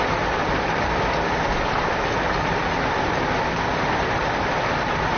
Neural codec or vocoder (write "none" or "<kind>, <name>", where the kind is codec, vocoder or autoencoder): vocoder, BigVGAN v2